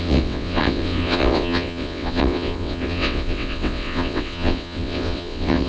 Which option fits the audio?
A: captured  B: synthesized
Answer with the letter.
B